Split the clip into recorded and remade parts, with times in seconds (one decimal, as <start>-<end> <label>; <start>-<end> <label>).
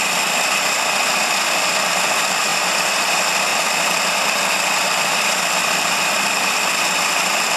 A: 0.0-2.5 recorded; 2.5-3.1 remade; 3.1-3.5 recorded; 3.5-5.4 remade; 5.4-7.6 recorded